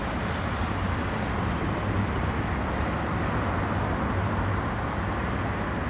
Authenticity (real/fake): real